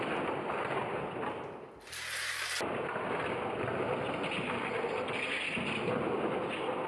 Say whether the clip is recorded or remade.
recorded